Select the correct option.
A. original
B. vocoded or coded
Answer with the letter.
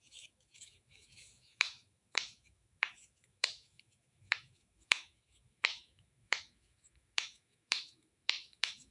B